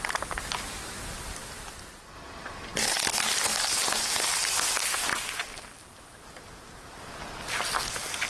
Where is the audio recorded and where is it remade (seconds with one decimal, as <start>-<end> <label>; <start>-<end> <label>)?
0.0-8.3 recorded